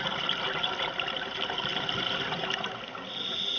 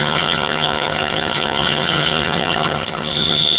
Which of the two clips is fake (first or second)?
second